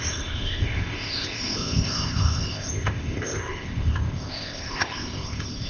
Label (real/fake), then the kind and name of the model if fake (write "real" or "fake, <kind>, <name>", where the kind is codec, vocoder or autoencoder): fake, codec, ZipCodec